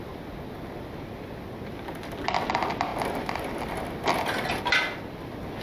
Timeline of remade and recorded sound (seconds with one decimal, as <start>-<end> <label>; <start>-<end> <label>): 0.0-5.6 recorded